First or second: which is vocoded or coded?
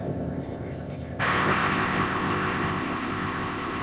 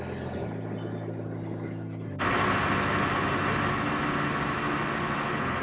first